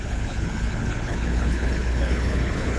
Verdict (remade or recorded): remade